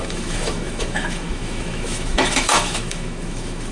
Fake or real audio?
fake